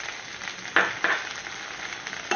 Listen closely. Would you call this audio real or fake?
real